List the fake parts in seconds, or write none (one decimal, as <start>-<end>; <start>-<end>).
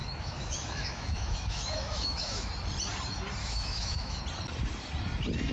0.0-2.5; 3.4-4.2